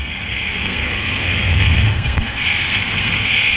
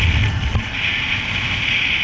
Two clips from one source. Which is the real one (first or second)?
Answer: second